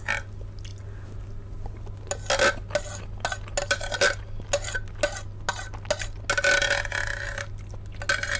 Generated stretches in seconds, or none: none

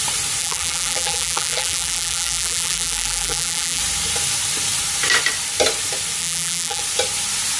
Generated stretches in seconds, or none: 0.4-3.8 (vocoder, BigVGAN v2); 6.2-6.8

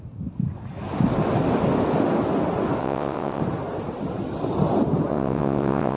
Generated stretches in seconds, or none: 2.8-3.4 (vocoder, WaveNeXt); 5.1-6.0

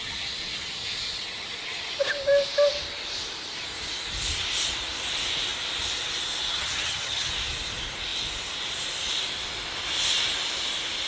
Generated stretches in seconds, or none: 6.5-7.3 (vocoder, HiFi-GAN)

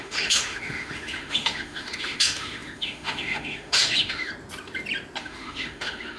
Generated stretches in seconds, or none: 0.0-4.3 (autoencoder, DAC-VAE); 5.2-6.2

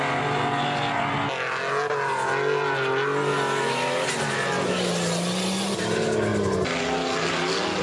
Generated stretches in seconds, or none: none